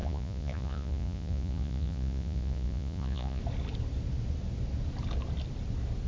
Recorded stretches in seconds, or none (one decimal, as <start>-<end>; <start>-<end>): 3.4-6.1